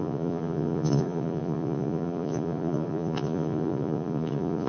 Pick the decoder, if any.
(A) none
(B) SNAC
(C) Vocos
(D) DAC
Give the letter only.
C